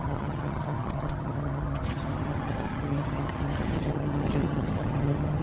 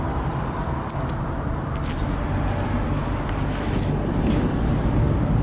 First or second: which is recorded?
second